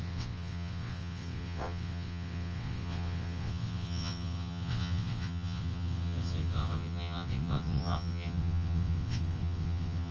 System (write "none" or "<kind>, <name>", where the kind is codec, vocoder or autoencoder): vocoder, WaveNeXt